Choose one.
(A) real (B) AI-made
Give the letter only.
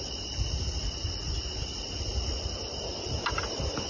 A